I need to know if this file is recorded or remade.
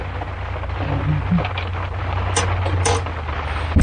recorded